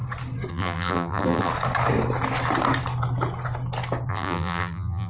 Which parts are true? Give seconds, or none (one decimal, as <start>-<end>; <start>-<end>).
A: 0.0-0.5; 1.5-4.1